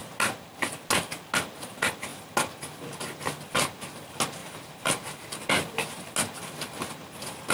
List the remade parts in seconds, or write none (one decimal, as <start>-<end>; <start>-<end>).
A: 4.4-5.4